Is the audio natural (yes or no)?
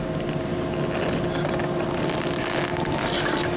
yes